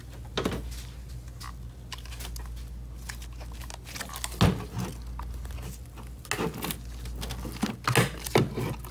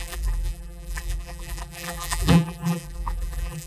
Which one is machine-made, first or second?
second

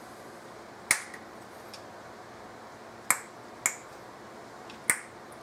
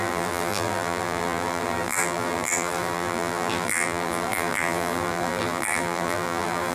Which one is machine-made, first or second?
second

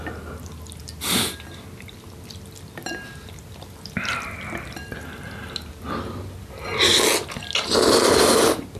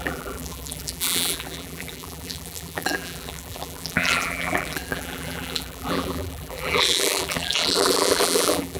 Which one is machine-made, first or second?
second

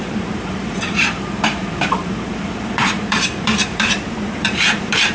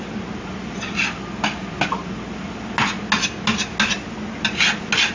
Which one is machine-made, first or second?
first